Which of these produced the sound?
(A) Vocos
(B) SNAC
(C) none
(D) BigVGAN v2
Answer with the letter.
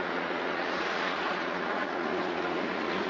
A